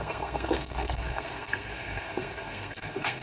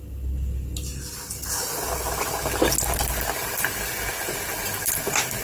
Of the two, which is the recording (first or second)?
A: second